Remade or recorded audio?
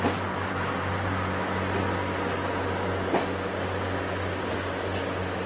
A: recorded